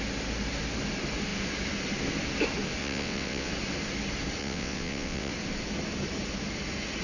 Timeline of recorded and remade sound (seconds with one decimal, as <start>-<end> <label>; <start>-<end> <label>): 0.0-2.8 recorded; 2.8-3.5 remade; 3.5-4.4 recorded; 4.4-5.3 remade; 5.3-7.0 recorded